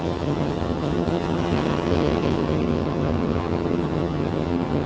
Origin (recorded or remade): remade